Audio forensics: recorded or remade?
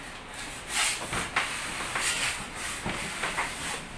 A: recorded